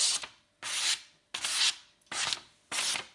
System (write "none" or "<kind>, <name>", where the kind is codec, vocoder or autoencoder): none